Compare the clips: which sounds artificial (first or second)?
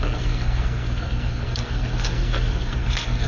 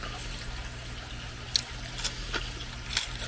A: first